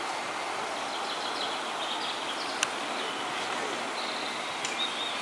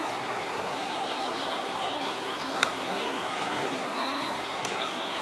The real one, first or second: first